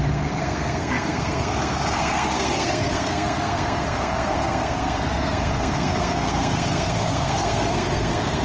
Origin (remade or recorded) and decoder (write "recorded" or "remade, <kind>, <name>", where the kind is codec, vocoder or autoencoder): remade, codec, SNAC